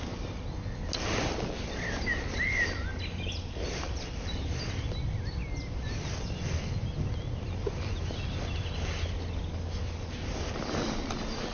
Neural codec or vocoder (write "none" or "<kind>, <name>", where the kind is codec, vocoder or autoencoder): none